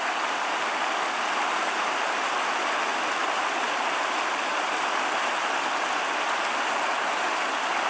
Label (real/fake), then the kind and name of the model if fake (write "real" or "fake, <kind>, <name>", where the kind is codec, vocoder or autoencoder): real